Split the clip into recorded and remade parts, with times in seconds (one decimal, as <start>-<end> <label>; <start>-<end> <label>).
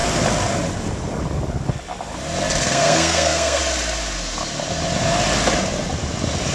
0.0-2.6 recorded; 2.6-3.6 remade; 3.6-6.5 recorded